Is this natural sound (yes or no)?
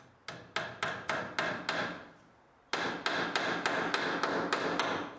yes